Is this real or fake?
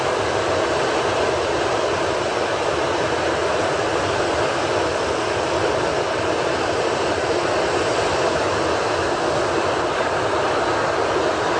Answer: real